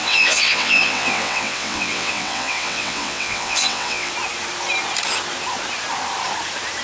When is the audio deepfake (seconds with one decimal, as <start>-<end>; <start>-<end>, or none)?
0.0-4.1